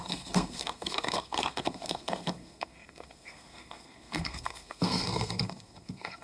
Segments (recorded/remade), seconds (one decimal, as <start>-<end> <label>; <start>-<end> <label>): 0.0-6.2 remade